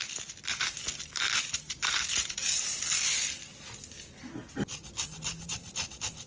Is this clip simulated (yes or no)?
no